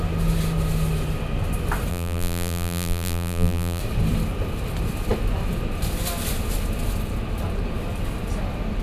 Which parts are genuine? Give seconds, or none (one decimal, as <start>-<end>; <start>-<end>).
0.0-1.9; 3.8-8.8